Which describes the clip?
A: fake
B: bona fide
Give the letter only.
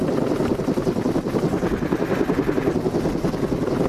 B